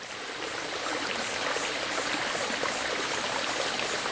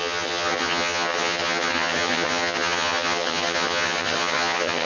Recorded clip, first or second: first